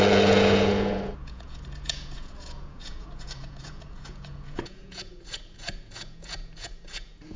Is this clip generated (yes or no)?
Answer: yes